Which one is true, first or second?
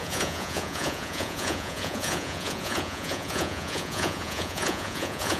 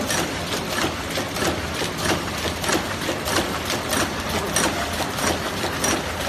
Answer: second